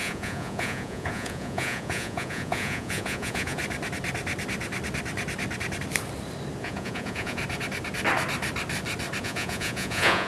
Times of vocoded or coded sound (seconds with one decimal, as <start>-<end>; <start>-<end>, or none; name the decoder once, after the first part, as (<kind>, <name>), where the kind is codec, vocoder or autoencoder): 0.0-3.6 (vocoder, Vocos); 6.6-7.4; 9.2-10.3